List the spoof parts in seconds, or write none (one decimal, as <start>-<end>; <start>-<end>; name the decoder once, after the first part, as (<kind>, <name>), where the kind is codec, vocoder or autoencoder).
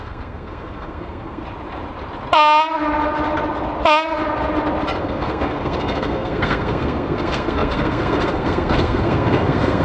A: 0.0-1.4 (codec, SNAC); 5.0-9.8